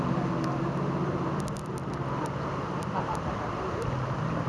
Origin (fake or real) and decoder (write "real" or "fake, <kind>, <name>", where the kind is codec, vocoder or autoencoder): real